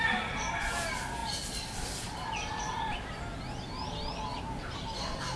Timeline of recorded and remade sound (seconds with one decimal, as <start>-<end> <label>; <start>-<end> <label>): 0.0-5.4 recorded